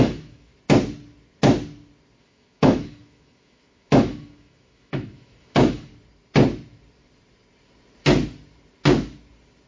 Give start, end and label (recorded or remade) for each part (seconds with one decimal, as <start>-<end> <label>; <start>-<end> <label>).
0.0-0.5 remade; 0.5-2.2 recorded; 2.2-5.9 remade; 5.9-9.7 recorded